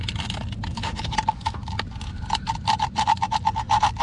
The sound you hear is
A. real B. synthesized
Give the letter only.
A